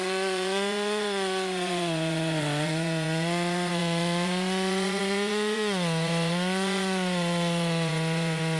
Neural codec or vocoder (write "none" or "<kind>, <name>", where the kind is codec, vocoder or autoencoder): vocoder, Vocos